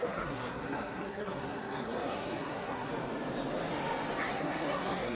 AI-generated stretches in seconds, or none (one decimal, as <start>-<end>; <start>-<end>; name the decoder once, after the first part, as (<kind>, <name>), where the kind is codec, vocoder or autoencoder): 0.0-2.9 (codec, SNAC); 4.2-5.1